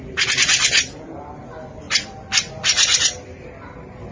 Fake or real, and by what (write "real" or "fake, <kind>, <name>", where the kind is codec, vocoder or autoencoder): real